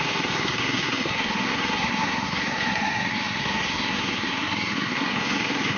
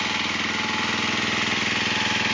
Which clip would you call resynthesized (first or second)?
first